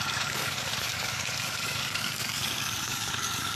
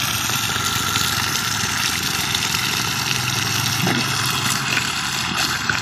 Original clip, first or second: second